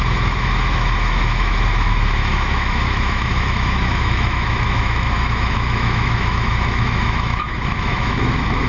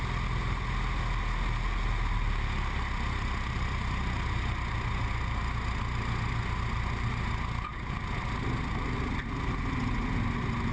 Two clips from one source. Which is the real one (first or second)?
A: second